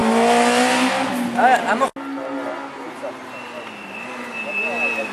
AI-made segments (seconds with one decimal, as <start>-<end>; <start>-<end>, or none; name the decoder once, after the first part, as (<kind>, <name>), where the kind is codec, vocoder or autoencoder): none